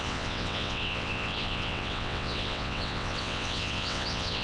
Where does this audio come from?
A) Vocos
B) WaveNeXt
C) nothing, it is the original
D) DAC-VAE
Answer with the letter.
B